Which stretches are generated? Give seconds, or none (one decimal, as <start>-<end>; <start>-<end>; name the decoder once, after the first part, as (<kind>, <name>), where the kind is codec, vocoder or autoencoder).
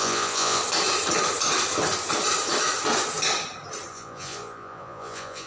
0.0-0.6 (vocoder, Vocos); 3.9-5.5